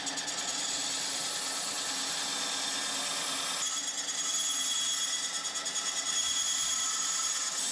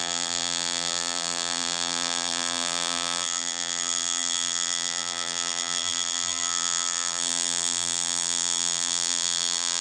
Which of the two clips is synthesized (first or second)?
second